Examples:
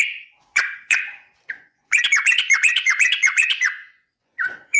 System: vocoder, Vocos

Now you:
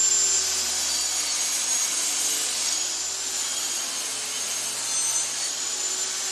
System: none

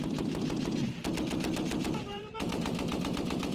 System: vocoder, BigVGAN v2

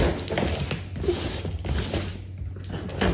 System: none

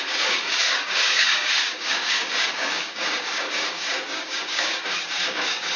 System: codec, DAC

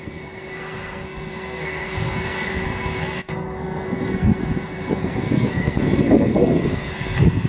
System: codec, SNAC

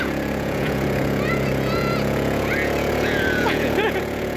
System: vocoder, Vocos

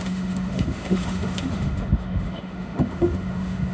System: autoencoder, DAC-VAE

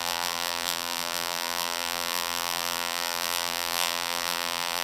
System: vocoder, BigVGAN v2